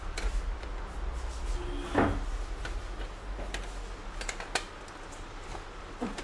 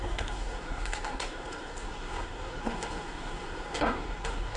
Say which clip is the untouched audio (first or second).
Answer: first